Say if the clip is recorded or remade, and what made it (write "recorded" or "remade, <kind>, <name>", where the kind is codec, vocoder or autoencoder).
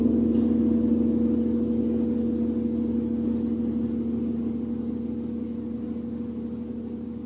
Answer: recorded